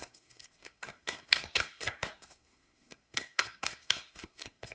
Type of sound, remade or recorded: remade